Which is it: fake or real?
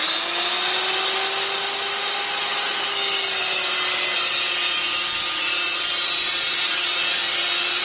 real